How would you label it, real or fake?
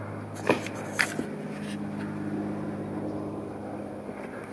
real